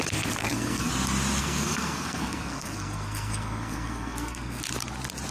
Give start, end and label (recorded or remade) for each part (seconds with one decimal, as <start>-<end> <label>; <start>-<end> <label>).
0.0-0.4 recorded; 0.4-0.9 remade; 0.9-1.4 recorded; 1.4-4.6 remade; 4.6-5.3 recorded